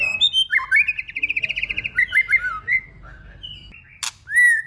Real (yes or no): yes